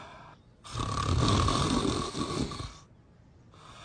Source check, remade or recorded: recorded